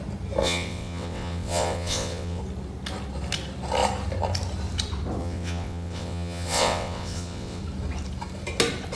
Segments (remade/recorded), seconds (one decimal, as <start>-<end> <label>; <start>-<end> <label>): 0.0-0.4 recorded; 0.4-2.4 remade; 2.4-5.2 recorded; 5.2-7.6 remade; 7.6-9.0 recorded